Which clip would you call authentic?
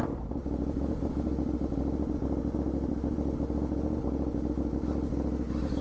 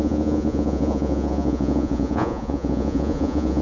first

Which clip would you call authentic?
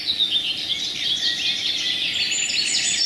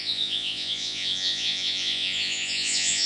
first